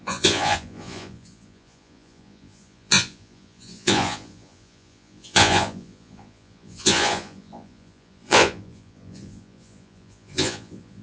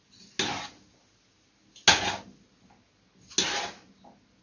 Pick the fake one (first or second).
first